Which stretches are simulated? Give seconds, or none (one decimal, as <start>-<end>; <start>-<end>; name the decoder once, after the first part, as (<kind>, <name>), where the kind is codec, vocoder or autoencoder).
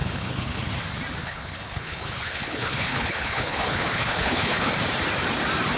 0.0-0.7 (codec, HILCodec); 1.2-4.7